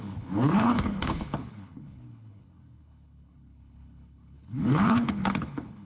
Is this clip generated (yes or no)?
yes